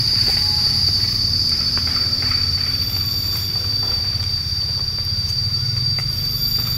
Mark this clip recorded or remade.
remade